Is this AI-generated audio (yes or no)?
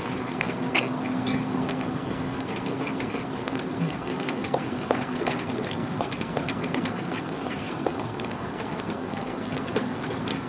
yes